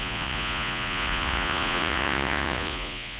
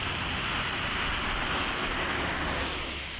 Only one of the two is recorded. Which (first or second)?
second